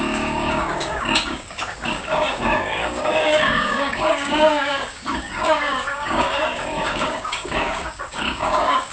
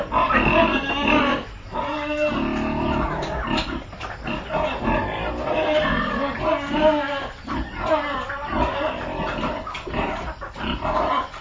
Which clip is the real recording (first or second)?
second